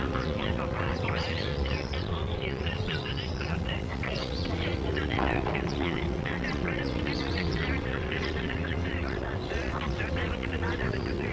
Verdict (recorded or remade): remade